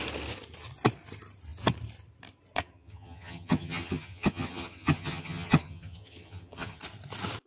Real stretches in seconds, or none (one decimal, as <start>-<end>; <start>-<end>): 0.0-2.6; 6.8-7.5

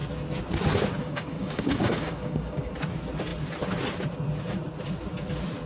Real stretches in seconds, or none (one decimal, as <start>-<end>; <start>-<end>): 0.0-1.0; 2.7-5.7

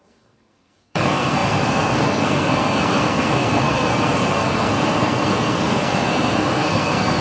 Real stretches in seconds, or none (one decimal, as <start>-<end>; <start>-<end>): none